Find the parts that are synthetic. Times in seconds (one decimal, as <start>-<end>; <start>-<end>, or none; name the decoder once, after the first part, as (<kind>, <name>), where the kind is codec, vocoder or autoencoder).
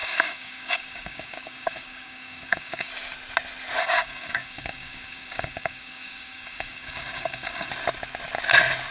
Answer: 0.0-2.9 (codec, DAC); 3.8-7.7